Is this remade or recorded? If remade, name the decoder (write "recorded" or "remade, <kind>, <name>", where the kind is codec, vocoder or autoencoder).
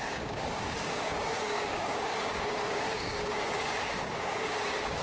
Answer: remade, codec, DAC